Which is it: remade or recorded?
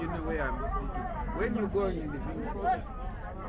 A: recorded